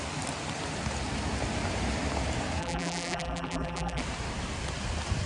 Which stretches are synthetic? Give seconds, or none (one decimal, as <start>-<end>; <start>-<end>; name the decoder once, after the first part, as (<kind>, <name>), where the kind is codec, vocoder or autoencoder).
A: 2.6-4.0 (vocoder, BigVGAN v2)